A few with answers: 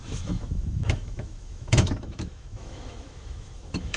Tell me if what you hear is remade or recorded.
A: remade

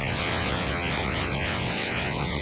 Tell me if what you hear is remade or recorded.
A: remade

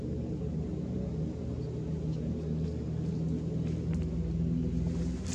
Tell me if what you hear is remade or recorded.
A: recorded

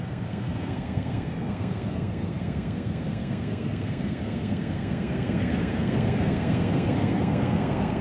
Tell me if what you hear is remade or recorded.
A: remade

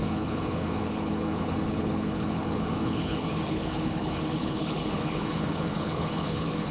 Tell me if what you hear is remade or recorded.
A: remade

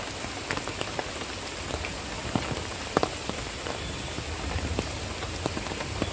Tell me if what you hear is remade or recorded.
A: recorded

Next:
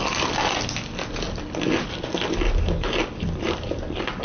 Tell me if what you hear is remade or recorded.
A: recorded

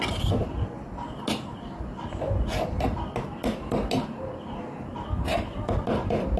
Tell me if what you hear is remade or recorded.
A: recorded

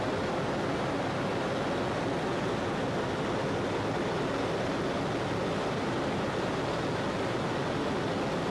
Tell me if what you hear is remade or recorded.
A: recorded